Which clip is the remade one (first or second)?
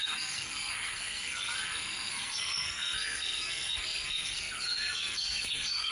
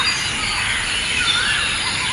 first